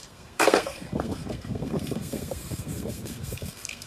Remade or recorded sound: remade